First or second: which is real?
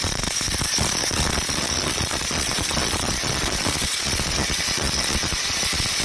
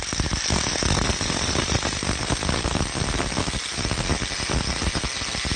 second